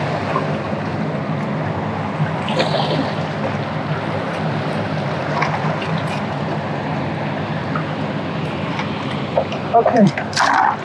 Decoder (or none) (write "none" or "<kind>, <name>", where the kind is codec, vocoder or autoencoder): none